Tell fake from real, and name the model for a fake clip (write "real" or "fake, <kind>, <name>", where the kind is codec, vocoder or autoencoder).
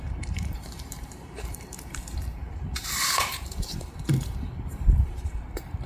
fake, vocoder, BigVGAN v2